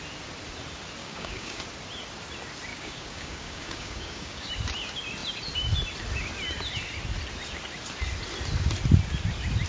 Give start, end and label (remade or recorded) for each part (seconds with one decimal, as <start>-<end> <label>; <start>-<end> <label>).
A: 0.0-1.0 recorded; 1.0-1.6 remade; 1.6-2.7 recorded; 2.7-4.5 remade; 4.5-9.7 recorded